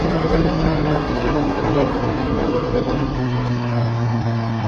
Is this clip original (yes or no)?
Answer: no